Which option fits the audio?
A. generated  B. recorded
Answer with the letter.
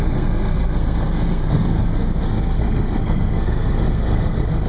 A